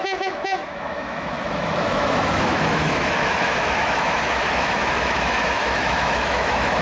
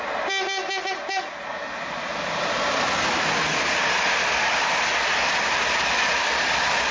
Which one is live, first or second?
second